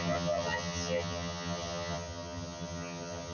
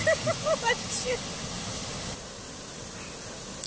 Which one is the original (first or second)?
second